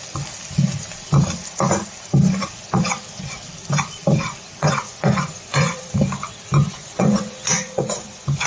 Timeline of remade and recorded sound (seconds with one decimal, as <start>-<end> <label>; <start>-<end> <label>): 0.0-4.6 recorded; 4.6-5.9 remade; 5.9-6.5 recorded; 6.5-8.5 remade